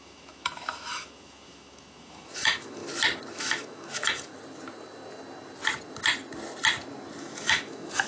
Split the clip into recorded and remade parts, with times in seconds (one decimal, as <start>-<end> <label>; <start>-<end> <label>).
0.0-2.8 remade; 2.8-3.3 recorded; 3.3-4.3 remade; 4.3-7.2 recorded; 7.2-8.1 remade